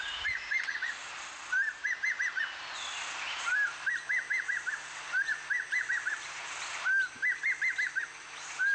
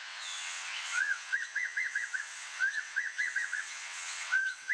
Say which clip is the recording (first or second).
first